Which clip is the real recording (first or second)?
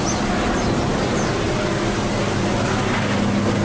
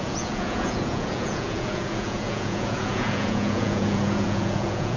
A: first